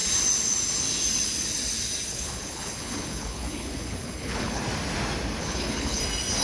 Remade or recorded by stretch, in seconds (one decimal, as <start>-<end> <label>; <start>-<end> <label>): 0.0-2.1 recorded; 2.1-4.6 remade; 4.6-5.4 recorded; 5.4-6.0 remade; 6.0-6.4 recorded